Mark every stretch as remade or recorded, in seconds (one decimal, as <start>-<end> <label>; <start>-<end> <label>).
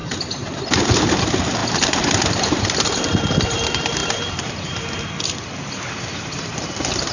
0.0-7.1 remade